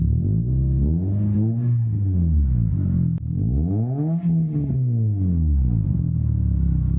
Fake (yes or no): no